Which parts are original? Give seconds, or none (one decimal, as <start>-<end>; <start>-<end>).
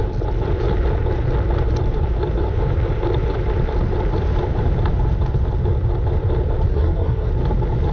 0.0-6.7; 7.3-7.9